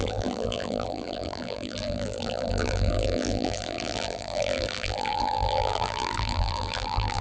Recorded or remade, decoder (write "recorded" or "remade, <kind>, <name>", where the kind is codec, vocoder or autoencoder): remade, vocoder, BigVGAN v2